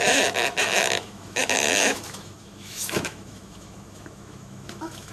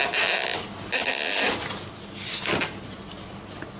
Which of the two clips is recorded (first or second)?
second